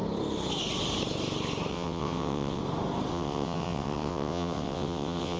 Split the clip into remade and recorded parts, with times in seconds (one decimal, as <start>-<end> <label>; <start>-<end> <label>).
0.0-1.7 recorded; 1.7-2.6 remade; 2.6-3.1 recorded; 3.1-5.4 remade